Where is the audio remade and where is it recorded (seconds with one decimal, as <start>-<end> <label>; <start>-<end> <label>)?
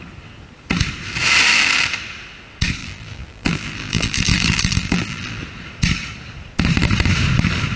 0.0-2.8 recorded; 2.8-5.4 remade; 5.4-7.8 recorded